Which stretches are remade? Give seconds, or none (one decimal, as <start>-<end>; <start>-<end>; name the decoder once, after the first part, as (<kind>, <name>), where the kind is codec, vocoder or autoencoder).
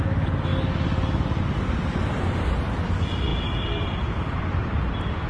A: none